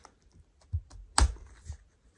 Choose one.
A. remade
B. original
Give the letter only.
B